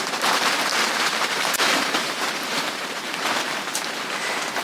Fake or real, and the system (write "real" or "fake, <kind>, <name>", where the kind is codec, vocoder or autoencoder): fake, vocoder, BigVGAN v2